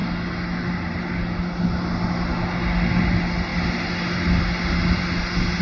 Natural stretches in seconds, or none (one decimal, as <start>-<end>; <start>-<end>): 0.0-5.6